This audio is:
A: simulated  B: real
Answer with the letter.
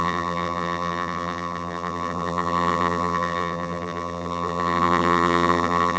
A